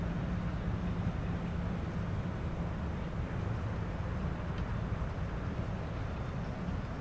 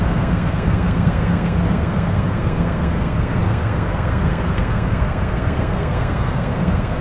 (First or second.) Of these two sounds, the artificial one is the second